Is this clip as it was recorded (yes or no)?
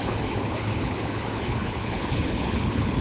no